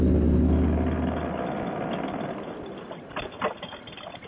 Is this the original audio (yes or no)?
yes